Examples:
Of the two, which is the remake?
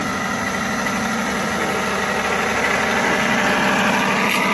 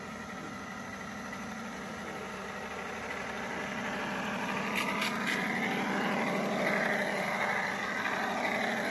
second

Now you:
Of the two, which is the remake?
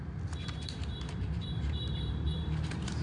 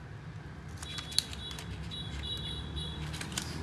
first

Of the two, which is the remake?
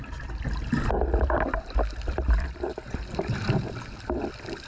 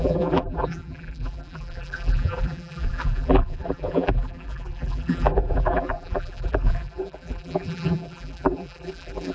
second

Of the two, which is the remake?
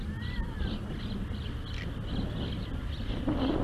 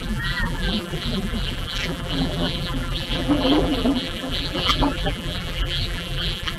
second